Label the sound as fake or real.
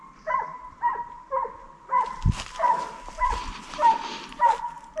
real